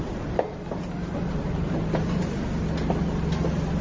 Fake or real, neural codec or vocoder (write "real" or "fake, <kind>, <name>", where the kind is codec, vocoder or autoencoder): real